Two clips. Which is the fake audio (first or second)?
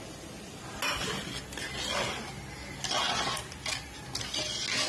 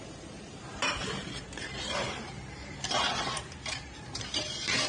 second